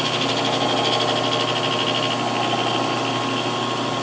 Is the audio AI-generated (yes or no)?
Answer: no